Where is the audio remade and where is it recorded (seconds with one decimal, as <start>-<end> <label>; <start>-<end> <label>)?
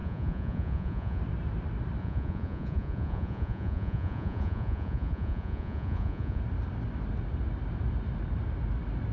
0.0-1.2 remade; 1.2-2.0 recorded; 2.0-6.4 remade; 6.4-9.1 recorded